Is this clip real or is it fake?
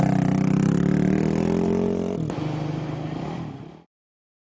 real